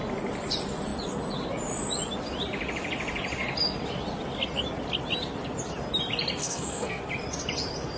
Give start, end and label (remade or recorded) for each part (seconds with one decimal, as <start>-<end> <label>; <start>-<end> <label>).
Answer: 0.0-6.4 recorded; 6.4-7.0 remade; 7.0-8.0 recorded